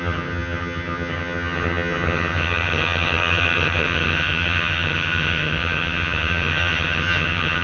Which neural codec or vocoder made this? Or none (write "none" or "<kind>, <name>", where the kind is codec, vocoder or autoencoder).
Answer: vocoder, HiFi-GAN